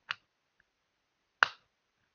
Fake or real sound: real